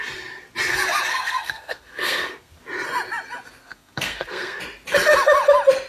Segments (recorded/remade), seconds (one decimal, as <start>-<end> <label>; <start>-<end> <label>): 0.0-1.1 recorded; 1.1-2.6 remade; 2.6-3.6 recorded; 3.6-4.6 remade; 4.6-5.9 recorded